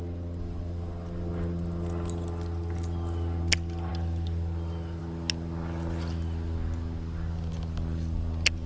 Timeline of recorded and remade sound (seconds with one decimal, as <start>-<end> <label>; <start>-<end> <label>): 0.0-8.7 recorded